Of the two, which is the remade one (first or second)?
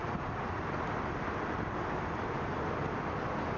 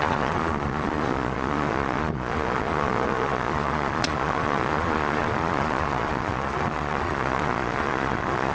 second